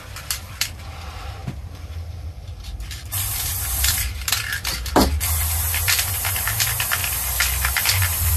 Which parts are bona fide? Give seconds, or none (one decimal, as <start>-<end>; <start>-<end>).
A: 7.0-8.0